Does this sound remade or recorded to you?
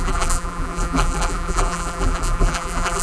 remade